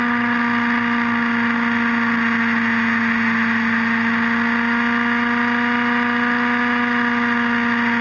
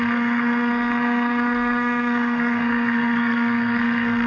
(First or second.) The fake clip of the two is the second